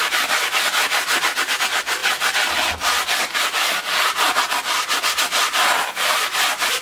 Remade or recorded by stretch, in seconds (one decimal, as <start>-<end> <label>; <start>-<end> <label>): 0.0-6.8 recorded